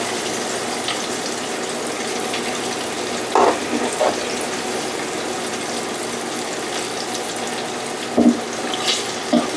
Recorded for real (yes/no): yes